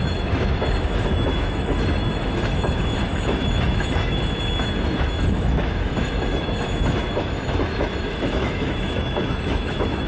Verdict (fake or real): fake